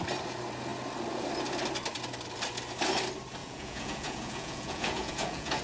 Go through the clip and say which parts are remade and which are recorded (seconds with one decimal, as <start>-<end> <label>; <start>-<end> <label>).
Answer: 0.0-3.4 recorded; 3.4-5.6 remade